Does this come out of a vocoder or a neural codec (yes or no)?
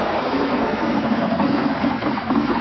yes